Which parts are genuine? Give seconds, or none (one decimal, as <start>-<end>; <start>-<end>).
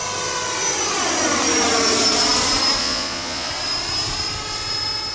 0.0-2.8; 3.5-5.1